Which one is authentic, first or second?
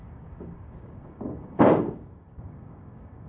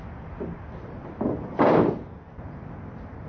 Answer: second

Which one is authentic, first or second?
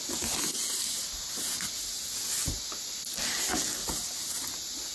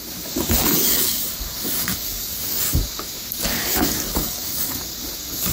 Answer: first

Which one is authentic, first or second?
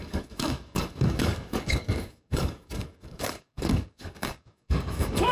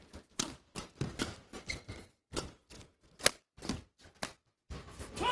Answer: second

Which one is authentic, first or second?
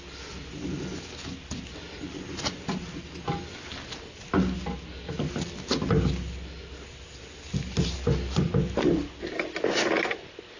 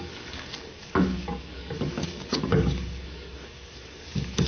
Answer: first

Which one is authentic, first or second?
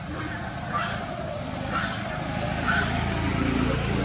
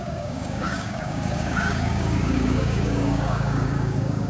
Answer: first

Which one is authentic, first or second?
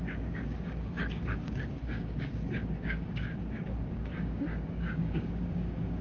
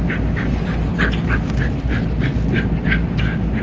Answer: second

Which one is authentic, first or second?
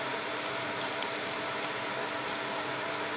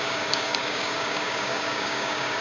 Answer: first